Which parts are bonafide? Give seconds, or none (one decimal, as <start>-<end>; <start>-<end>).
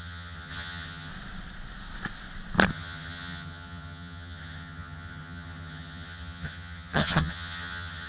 1.1-2.7